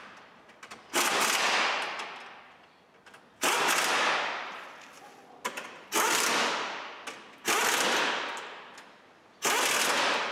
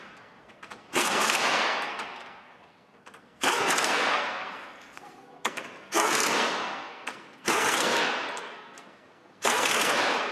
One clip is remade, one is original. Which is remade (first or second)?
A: second